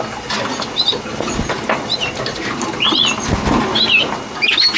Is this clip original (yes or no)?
yes